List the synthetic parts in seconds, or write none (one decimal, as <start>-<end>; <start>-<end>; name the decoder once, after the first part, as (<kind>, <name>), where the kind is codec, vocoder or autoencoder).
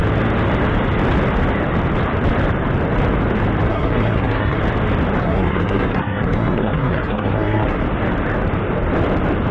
3.7-4.6 (codec, SNAC); 5.2-7.8